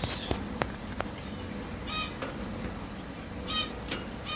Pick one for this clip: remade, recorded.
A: recorded